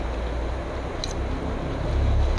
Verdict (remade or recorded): recorded